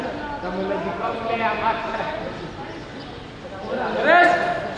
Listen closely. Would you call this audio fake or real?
real